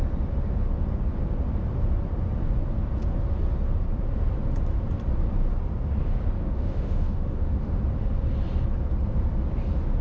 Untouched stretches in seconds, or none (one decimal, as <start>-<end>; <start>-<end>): 0.0-6.4; 7.8-10.0